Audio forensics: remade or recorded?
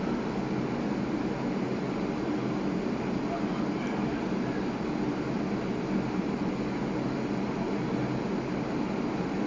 recorded